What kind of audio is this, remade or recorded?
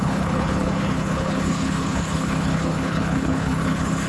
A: remade